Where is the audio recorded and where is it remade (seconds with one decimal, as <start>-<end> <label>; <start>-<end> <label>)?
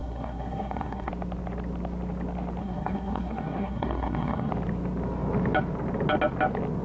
0.0-1.1 remade; 1.1-2.6 recorded; 2.6-4.5 remade; 4.5-6.8 recorded